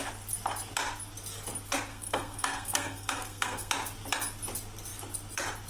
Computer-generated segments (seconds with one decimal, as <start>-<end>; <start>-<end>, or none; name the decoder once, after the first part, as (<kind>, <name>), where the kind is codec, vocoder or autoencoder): 1.9-3.7 (codec, SNAC)